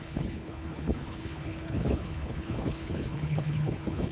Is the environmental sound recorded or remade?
remade